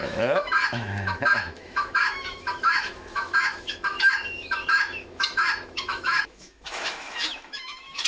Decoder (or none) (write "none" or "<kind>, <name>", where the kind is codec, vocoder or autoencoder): autoencoder, DAC-VAE